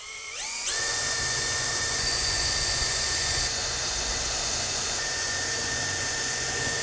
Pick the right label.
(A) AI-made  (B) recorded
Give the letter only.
A